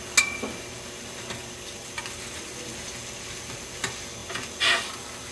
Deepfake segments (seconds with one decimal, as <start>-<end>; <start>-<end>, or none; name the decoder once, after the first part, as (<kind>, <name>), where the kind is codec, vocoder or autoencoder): none

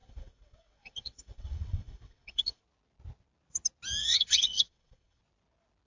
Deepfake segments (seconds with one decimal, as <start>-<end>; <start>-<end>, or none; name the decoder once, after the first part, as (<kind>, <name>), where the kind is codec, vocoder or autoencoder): 0.0-2.6 (vocoder, WaveNeXt); 4.0-5.2